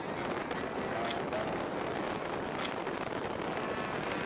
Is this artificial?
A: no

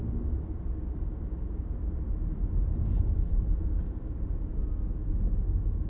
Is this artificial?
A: no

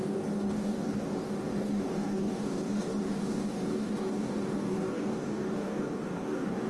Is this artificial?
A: yes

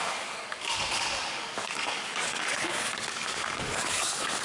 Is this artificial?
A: yes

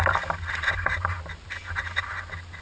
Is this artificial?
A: no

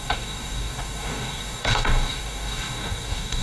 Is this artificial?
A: yes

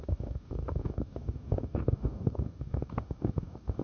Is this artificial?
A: yes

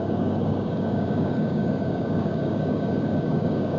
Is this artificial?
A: yes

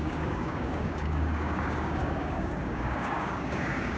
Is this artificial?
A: yes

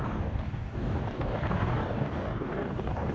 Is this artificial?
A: yes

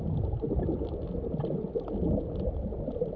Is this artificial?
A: no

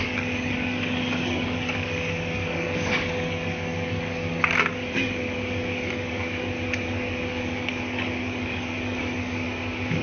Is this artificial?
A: yes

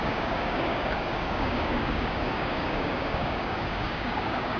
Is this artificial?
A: yes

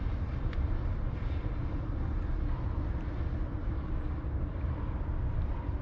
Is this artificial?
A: no